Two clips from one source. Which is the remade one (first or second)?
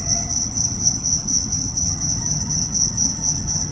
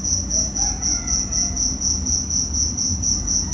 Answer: first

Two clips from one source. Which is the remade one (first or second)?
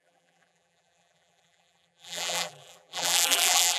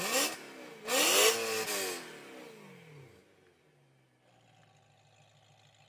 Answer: first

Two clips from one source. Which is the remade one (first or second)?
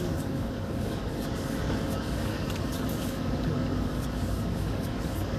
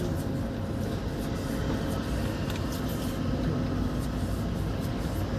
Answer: first